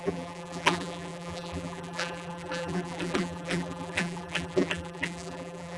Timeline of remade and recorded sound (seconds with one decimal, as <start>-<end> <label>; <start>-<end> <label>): 0.0-5.8 remade